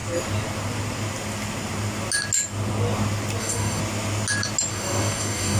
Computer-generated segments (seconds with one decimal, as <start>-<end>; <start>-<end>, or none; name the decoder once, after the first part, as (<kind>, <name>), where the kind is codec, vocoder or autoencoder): 3.4-3.8 (codec, DAC); 4.7-5.6